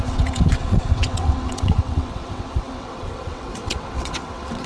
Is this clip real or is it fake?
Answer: fake